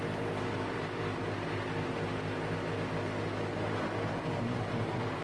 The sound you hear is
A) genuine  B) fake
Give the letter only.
A